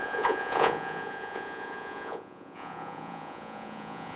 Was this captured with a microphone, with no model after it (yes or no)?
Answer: no